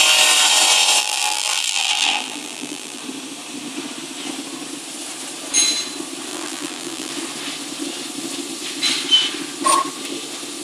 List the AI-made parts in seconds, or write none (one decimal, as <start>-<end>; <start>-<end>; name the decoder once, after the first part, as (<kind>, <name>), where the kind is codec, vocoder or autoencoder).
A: 1.0-3.0 (vocoder, BigVGAN v2); 6.3-7.1